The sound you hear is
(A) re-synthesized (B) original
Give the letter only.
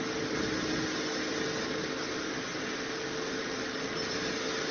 B